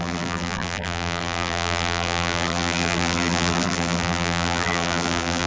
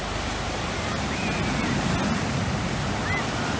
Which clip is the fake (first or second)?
first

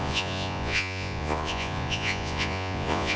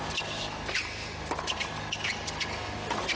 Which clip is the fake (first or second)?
first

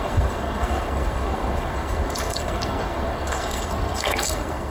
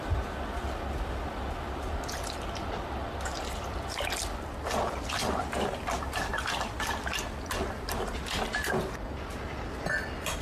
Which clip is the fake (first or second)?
first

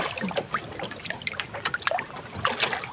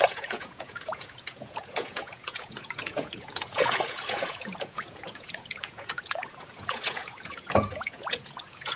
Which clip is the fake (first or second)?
second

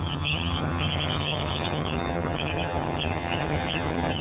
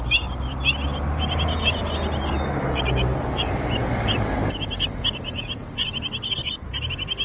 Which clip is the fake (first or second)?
first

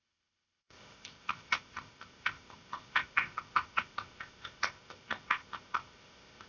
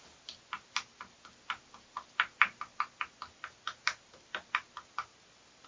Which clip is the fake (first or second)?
first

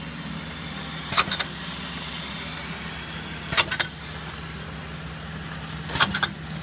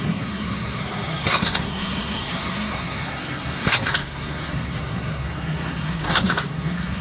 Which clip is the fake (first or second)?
second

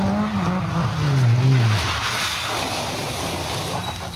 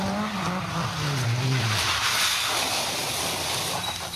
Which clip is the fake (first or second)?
second